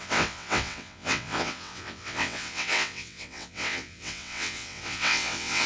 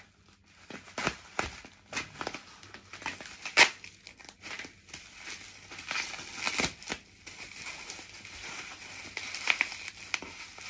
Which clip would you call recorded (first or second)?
second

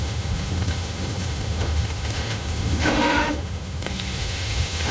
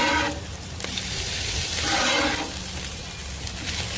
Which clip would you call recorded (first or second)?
second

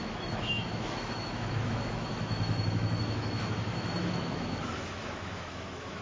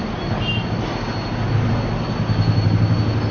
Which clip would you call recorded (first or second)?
second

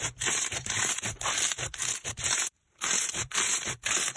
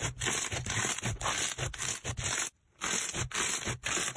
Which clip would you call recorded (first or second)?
second